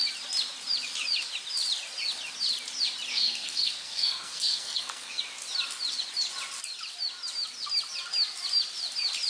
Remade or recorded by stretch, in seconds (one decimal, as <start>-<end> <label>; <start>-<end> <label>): 0.0-3.1 recorded; 3.1-5.2 remade; 5.2-9.3 recorded